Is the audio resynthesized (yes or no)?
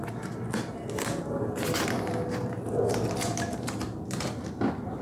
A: no